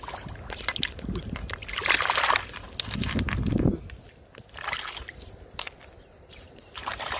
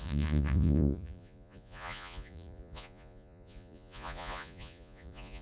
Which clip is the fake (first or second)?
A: second